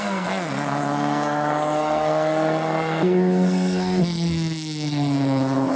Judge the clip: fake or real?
fake